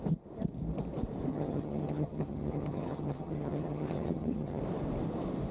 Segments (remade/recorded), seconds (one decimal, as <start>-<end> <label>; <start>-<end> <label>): 0.0-1.3 recorded; 1.3-4.6 remade; 4.6-5.5 recorded